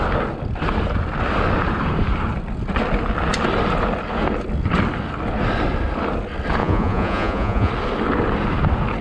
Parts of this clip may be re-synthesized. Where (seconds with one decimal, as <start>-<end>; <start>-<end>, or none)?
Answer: 6.6-7.7